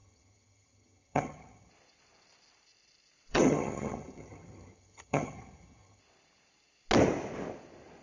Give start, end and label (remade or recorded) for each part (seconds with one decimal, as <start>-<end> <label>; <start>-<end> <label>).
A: 0.0-1.7 remade; 1.7-3.3 recorded; 3.3-6.0 remade; 6.0-8.0 recorded